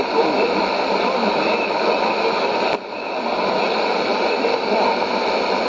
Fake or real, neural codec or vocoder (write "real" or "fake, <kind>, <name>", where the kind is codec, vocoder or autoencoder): real